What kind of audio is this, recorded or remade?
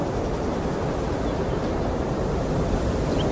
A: remade